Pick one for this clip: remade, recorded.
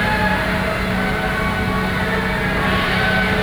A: recorded